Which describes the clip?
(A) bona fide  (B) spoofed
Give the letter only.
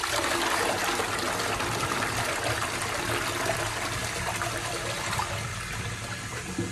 A